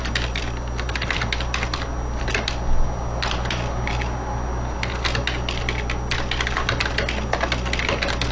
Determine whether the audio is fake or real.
real